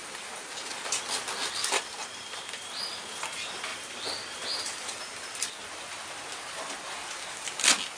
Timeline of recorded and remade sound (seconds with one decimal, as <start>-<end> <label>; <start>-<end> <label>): 0.0-0.9 remade; 0.9-1.9 recorded; 1.9-2.8 remade; 2.8-3.7 recorded; 3.7-5.5 remade; 5.5-8.0 recorded